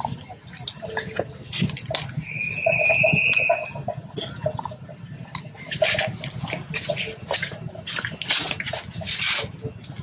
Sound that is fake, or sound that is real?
real